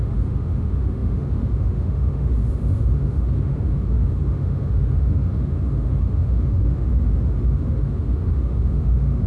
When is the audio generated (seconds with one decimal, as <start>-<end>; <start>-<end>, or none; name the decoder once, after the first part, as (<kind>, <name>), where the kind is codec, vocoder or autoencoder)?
0.0-9.3 (autoencoder, DAC-VAE)